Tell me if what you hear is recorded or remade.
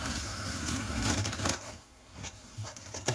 remade